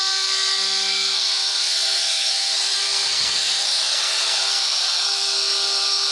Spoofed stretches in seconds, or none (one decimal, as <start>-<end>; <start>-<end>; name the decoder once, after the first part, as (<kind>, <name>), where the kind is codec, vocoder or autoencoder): 0.0-6.1 (codec, SNAC)